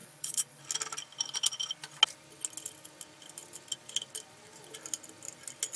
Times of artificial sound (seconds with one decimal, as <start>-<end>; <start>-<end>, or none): 0.0-0.6